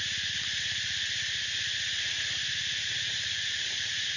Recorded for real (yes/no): yes